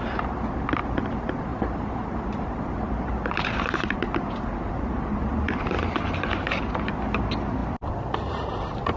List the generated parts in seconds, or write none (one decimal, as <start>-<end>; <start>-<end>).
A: 1.5-4.1